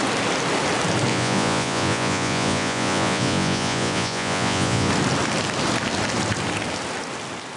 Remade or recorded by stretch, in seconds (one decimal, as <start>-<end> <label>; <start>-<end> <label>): 0.0-1.1 recorded; 1.1-4.9 remade; 4.9-7.6 recorded